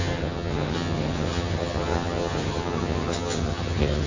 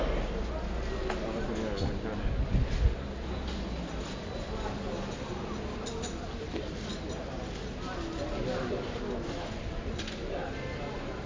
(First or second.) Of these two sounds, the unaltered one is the second